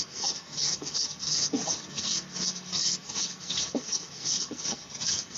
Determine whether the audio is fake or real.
fake